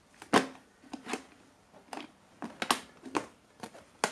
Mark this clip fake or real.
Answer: real